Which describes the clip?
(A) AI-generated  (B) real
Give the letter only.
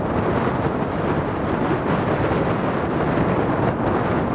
B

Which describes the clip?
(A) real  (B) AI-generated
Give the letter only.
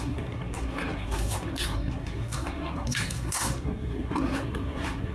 B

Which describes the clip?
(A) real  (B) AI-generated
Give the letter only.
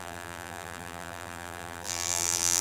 B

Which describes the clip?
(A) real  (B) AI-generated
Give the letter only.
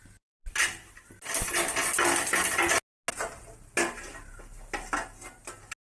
A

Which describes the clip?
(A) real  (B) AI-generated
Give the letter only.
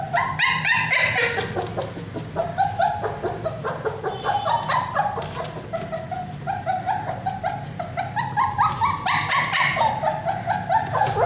A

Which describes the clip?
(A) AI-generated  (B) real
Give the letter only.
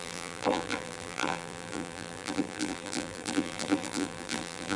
A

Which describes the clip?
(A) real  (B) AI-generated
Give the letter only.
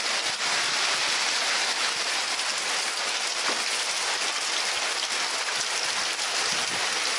A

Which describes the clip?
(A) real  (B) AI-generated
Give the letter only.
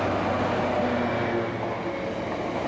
A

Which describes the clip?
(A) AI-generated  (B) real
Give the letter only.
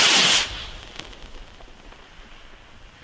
B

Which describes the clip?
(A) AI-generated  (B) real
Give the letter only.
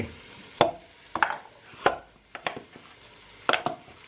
B